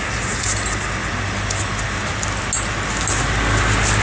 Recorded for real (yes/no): yes